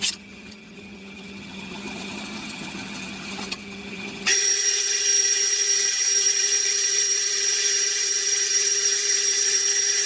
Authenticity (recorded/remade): remade